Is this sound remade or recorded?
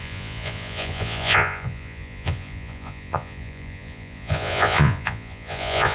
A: remade